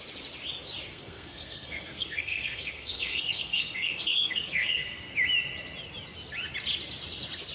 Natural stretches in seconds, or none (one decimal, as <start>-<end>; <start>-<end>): 0.0-0.9; 5.1-7.5